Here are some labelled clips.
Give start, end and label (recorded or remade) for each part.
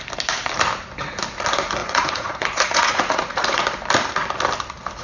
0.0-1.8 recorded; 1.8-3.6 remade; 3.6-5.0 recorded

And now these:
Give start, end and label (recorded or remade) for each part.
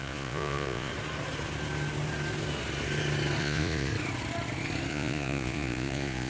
0.0-0.9 remade; 0.9-3.4 recorded; 3.4-3.9 remade; 3.9-4.9 recorded; 4.9-6.3 remade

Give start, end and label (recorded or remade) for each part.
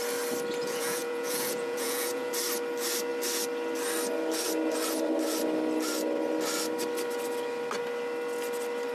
0.0-0.6 recorded; 0.6-2.3 remade; 2.3-8.9 recorded